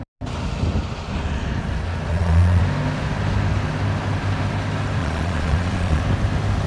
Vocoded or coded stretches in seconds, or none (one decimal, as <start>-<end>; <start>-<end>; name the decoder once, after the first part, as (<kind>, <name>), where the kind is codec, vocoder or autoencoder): 2.1-2.6 (vocoder, Vocos); 5.0-6.0